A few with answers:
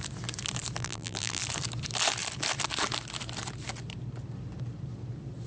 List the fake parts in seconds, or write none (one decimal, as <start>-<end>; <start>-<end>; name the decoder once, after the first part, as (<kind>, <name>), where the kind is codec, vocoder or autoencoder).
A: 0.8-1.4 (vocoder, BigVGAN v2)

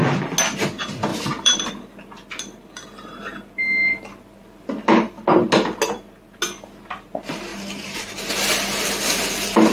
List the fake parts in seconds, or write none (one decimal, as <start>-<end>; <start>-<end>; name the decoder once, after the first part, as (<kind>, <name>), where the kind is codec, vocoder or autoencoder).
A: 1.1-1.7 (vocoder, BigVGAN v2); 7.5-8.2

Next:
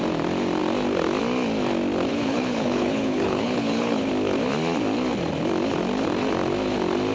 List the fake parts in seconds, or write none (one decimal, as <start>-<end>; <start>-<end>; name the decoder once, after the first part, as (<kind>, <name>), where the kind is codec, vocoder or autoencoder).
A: 2.1-4.1 (codec, HILCodec)

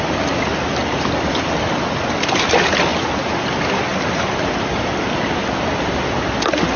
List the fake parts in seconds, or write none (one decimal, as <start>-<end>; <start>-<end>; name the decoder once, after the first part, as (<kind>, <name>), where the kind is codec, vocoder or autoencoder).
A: 0.8-2.2 (vocoder, BigVGAN v2)